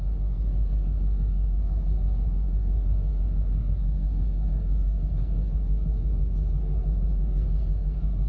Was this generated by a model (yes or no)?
yes